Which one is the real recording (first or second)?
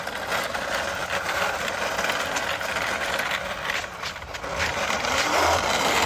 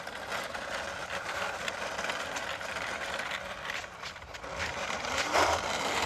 first